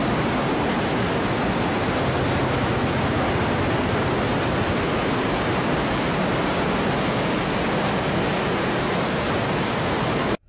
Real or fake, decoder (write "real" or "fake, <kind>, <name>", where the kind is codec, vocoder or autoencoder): real